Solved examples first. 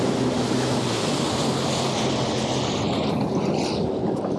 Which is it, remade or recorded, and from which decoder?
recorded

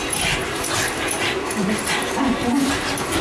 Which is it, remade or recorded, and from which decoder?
recorded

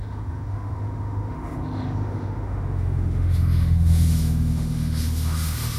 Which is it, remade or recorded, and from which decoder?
remade, autoencoder, DAC-VAE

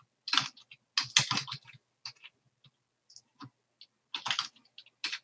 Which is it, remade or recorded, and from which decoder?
recorded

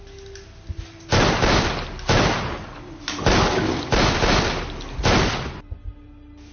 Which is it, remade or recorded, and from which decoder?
recorded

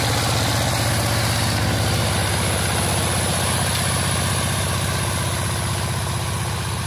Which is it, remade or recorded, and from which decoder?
recorded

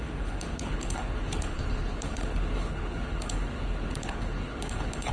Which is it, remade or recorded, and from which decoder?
remade, codec, HILCodec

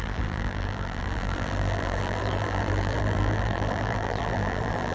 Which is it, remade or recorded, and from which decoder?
remade, vocoder, BigVGAN v2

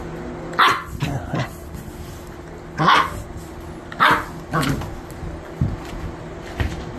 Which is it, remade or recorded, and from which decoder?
recorded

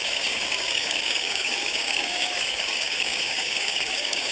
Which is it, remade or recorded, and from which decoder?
remade, codec, DAC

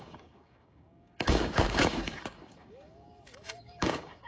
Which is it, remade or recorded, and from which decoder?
remade, codec, DAC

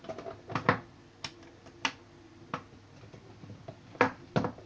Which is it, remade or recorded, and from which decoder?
recorded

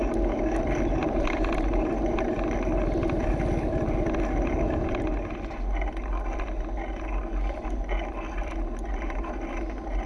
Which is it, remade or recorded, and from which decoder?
recorded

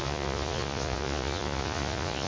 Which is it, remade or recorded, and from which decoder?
remade, vocoder, Vocos